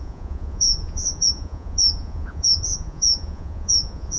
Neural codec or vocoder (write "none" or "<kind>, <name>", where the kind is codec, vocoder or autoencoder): vocoder, Vocos